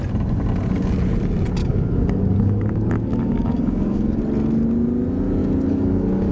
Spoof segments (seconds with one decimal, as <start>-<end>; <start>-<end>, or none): 1.6-4.2; 5.4-6.3